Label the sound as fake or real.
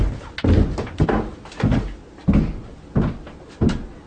real